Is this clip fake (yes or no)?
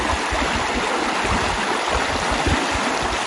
no